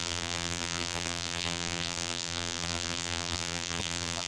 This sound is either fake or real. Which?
fake